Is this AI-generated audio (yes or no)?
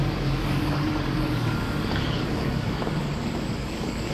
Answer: yes